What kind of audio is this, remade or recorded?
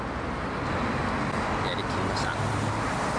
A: recorded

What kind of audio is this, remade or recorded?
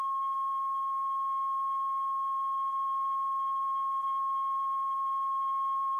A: remade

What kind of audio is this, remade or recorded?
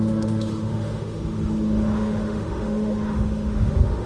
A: remade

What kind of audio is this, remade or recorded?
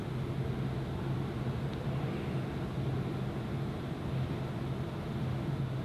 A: recorded